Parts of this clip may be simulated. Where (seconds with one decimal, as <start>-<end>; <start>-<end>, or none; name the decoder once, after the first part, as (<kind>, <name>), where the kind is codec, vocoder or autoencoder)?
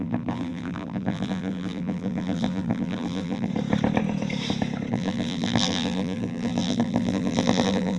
0.0-3.5 (vocoder, BigVGAN v2); 4.9-8.0